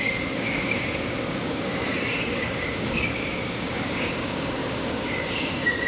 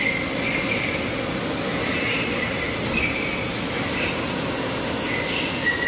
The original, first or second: second